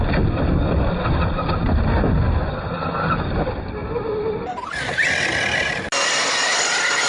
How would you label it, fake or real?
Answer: real